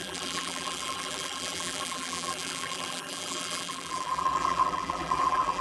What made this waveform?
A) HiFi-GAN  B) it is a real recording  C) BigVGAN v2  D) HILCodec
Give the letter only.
C